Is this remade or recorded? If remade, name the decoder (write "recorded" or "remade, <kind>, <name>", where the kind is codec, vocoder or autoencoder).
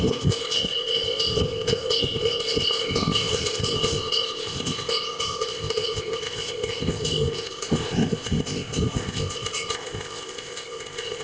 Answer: remade, codec, ZipCodec